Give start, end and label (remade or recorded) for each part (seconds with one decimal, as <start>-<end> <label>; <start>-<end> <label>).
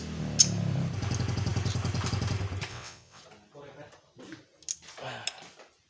0.0-2.7 recorded; 2.7-3.2 remade; 3.2-5.9 recorded